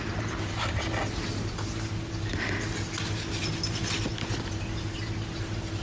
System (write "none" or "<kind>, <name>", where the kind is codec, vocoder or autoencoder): none